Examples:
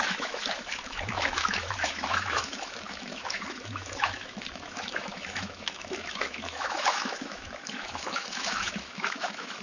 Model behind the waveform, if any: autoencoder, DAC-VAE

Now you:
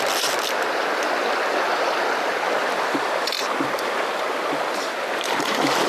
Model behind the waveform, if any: vocoder, BigVGAN v2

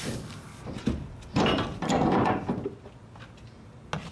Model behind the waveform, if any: none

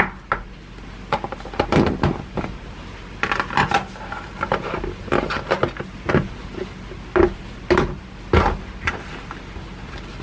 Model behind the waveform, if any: none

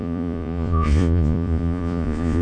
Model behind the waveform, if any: vocoder, Vocos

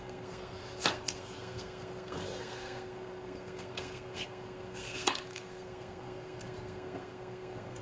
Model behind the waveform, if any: codec, SNAC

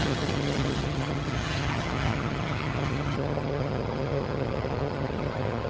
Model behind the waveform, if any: vocoder, HiFi-GAN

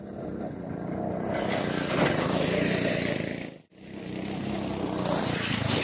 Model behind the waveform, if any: none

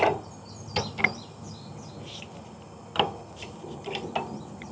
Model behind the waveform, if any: none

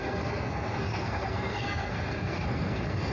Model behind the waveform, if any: codec, SNAC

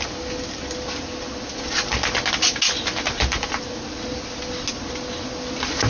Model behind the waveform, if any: none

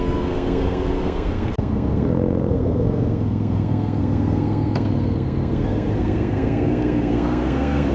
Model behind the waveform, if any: codec, SNAC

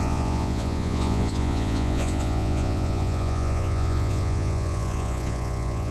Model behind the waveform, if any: vocoder, Vocos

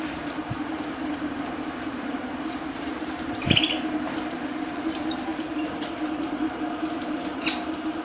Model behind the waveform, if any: vocoder, BigVGAN v2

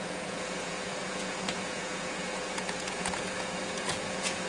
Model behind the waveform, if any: vocoder, Vocos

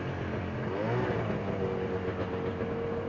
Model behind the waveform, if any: none